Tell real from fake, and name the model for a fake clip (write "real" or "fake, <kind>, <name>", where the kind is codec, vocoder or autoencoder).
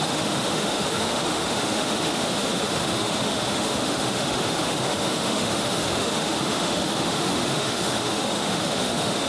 fake, autoencoder, DAC-VAE